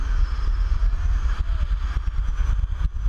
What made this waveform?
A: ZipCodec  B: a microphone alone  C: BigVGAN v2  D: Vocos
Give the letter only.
B